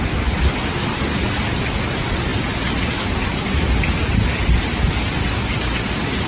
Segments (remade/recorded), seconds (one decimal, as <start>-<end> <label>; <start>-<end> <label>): 0.0-6.3 recorded